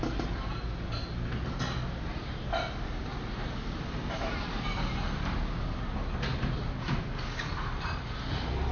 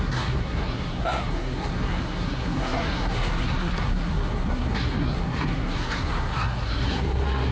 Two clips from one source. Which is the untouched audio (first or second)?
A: first